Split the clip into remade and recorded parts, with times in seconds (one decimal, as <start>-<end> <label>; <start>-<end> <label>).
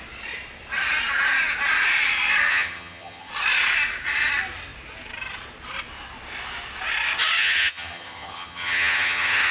0.0-2.5 recorded; 2.5-3.3 remade; 3.3-7.4 recorded; 7.4-9.5 remade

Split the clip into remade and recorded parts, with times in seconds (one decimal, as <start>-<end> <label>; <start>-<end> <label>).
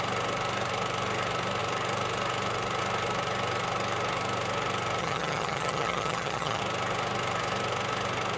0.0-5.0 recorded; 5.0-6.6 remade; 6.6-8.4 recorded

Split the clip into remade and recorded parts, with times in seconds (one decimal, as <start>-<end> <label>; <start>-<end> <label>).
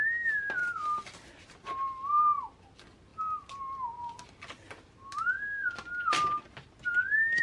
0.0-7.4 recorded